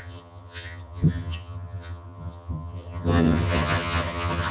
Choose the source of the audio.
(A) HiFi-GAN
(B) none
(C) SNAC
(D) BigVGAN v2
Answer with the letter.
A